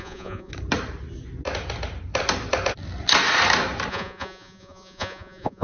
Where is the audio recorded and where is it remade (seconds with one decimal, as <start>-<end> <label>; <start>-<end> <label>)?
0.0-0.5 remade; 0.5-3.9 recorded; 3.9-5.6 remade